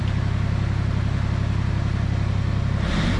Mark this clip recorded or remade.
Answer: recorded